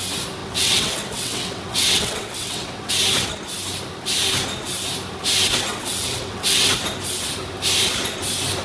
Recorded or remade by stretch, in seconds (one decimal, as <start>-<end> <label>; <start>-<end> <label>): 0.0-0.4 recorded; 0.4-2.9 remade; 2.9-5.7 recorded; 5.7-6.7 remade; 6.7-8.6 recorded